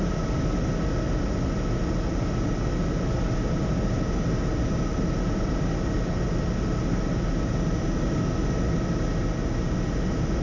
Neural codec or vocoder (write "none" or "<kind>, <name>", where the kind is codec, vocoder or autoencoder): none